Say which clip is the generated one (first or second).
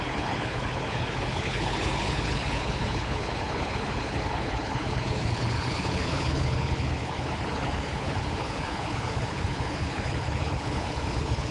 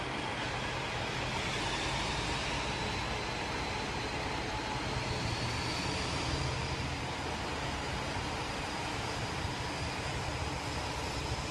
first